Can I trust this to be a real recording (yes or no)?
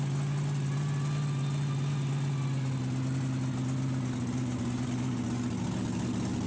yes